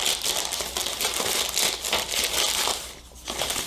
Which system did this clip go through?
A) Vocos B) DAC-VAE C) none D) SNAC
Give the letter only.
C